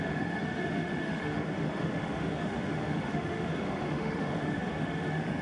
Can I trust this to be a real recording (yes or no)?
no